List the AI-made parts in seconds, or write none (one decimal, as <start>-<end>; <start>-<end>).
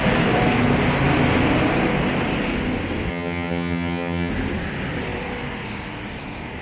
3.1-4.3